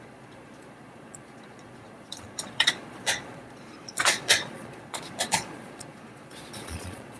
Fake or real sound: fake